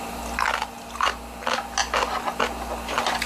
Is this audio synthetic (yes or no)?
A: no